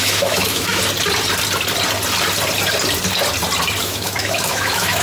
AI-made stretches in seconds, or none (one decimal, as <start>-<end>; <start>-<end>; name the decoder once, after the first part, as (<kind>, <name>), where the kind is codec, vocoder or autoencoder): 0.0-0.8 (autoencoder, DAC-VAE); 3.8-5.0